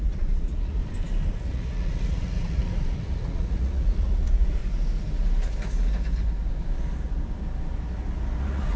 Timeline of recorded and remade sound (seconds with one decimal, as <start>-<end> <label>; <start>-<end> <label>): 0.0-0.8 remade; 0.8-1.3 recorded; 1.3-4.6 remade; 4.6-8.4 recorded; 8.4-8.8 remade